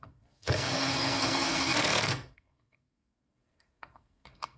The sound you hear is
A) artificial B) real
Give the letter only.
A